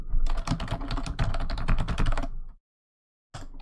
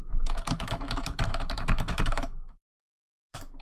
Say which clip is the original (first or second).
first